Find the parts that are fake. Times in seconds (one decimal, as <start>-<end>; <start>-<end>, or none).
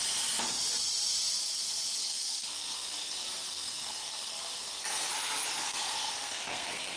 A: 2.0-5.1; 5.6-7.0